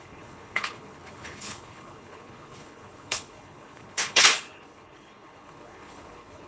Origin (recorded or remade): remade